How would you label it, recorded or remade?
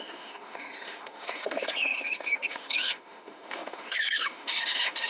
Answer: remade